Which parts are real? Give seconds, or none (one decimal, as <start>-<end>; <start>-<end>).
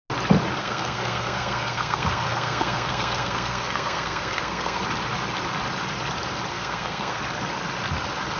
0.0-0.6; 4.8-6.5; 7.2-8.4